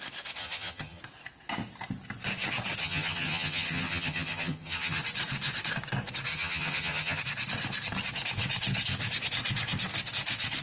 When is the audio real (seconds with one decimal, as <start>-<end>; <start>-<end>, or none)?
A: 0.0-0.4; 1.0-2.8; 5.0-6.3; 7.2-10.6